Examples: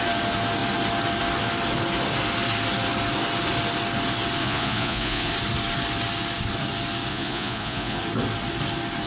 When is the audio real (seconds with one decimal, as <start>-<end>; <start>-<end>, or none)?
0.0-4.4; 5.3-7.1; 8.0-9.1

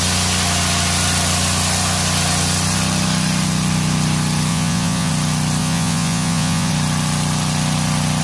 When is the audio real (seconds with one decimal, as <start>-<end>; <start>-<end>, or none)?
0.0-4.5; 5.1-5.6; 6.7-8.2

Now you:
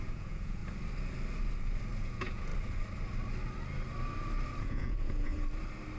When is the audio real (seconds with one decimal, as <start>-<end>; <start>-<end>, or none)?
0.6-2.0; 2.5-4.6; 5.3-6.0